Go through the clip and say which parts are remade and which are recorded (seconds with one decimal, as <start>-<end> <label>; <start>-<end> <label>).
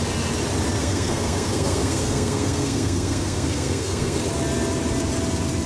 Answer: 0.0-0.8 recorded; 0.8-4.2 remade; 4.2-5.7 recorded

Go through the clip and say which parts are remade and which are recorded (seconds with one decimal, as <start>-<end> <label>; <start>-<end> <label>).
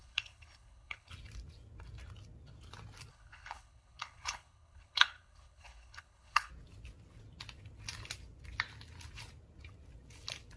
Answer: 0.0-1.1 remade; 1.1-3.1 recorded; 3.1-6.5 remade; 6.5-10.6 recorded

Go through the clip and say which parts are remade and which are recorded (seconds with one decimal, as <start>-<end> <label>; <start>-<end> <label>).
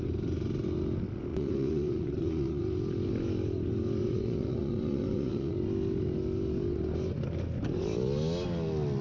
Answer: 0.0-1.3 recorded; 1.3-2.6 remade; 2.6-4.0 recorded; 4.0-5.6 remade; 5.6-9.0 recorded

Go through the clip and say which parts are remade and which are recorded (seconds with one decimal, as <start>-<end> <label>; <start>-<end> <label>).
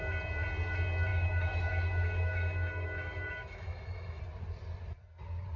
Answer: 0.0-1.1 recorded; 1.1-4.2 remade; 4.2-5.6 recorded